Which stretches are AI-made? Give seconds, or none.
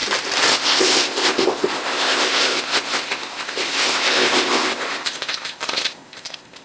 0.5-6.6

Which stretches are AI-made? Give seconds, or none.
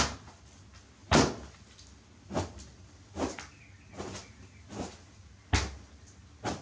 1.0-3.6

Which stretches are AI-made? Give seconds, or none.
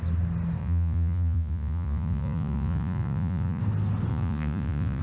0.6-3.6; 4.1-5.0